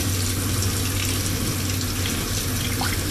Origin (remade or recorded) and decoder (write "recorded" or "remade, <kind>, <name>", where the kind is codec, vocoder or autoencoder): recorded